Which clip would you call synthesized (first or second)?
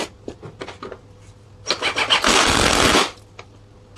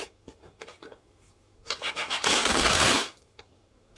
second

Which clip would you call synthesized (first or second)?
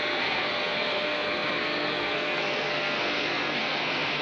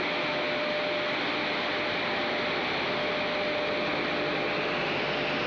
first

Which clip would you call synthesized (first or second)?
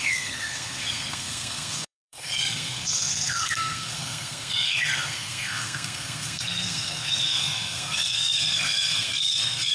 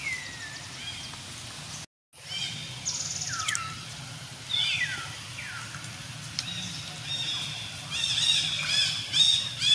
first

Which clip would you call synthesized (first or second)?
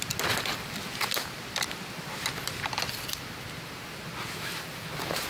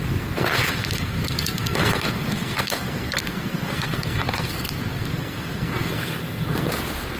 second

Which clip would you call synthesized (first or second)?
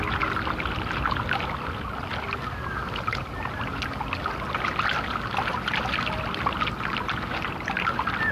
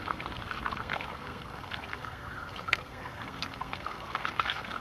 second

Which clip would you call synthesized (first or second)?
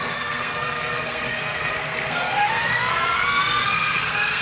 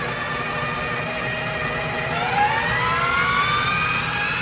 first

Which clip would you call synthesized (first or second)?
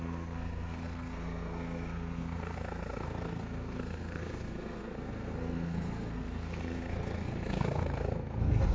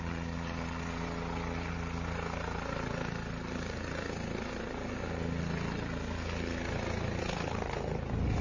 first